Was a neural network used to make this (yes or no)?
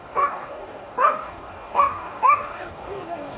yes